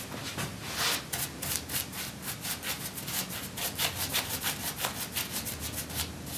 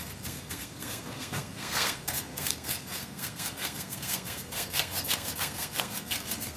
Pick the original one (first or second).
first